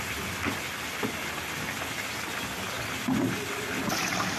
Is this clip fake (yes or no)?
no